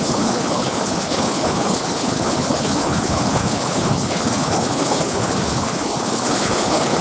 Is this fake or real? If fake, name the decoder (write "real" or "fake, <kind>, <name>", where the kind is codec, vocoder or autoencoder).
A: fake, codec, HILCodec